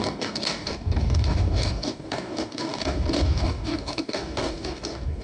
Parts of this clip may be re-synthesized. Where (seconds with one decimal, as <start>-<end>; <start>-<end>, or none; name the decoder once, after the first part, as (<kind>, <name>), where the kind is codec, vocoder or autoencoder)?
0.0-5.2 (codec, DAC)